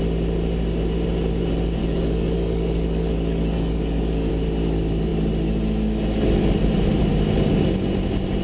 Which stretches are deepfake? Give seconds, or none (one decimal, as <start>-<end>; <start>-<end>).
1.8-4.3